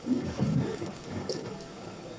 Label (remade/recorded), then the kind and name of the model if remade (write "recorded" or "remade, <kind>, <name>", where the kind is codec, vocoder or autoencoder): remade, codec, DAC